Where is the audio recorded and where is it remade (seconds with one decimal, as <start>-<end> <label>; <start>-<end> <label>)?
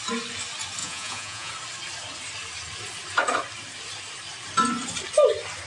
0.0-0.8 recorded; 0.8-1.5 remade; 1.5-5.7 recorded